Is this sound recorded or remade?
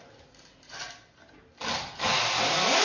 recorded